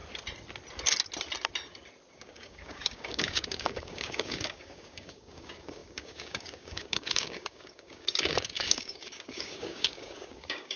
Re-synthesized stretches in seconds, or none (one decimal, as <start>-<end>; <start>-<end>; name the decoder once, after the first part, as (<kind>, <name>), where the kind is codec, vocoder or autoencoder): 2.1-10.8 (codec, DAC)